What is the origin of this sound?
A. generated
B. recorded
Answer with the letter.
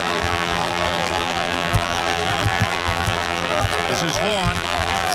A